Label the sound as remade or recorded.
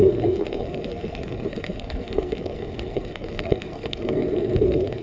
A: remade